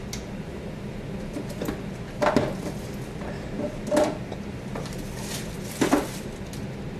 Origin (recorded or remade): recorded